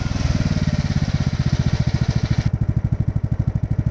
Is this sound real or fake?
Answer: real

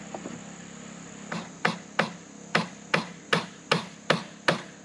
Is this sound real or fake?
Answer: real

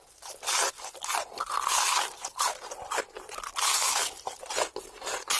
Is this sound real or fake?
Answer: real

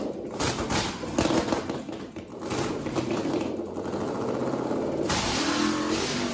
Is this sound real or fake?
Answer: real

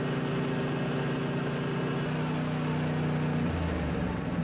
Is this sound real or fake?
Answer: real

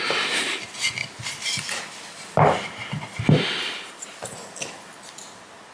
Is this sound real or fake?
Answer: real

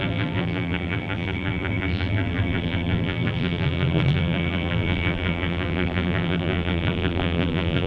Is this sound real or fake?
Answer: fake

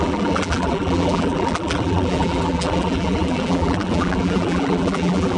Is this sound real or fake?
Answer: fake